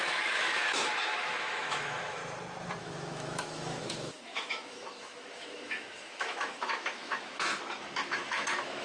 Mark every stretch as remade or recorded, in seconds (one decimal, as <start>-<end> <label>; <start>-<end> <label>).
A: 0.0-2.2 remade; 2.2-2.8 recorded; 2.8-8.8 remade